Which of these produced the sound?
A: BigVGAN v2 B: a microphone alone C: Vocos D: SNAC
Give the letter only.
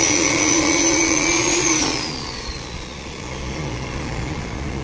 C